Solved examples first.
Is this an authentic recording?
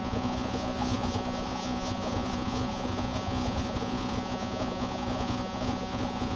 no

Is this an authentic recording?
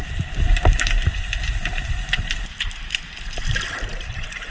yes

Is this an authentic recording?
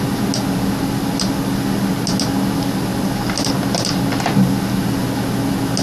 yes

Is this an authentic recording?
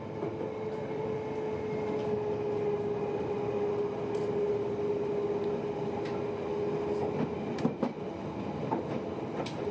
yes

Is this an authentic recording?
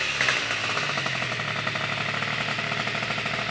yes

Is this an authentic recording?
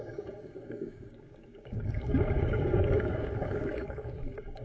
no